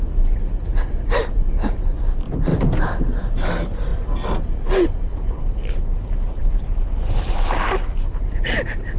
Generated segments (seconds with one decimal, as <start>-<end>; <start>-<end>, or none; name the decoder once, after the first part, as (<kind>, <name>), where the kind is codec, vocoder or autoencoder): 0.7-1.2 (vocoder, BigVGAN v2); 2.5-3.3; 3.9-4.6